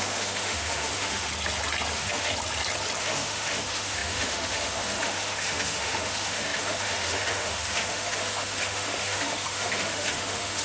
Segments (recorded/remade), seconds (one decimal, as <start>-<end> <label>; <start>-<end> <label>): 0.0-1.3 remade; 1.3-1.9 recorded; 1.9-2.3 remade; 2.3-3.0 recorded; 3.0-10.6 remade